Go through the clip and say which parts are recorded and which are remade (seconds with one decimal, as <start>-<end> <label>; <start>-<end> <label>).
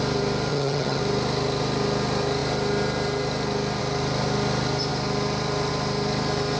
0.0-0.5 recorded; 0.5-1.0 remade; 1.0-6.6 recorded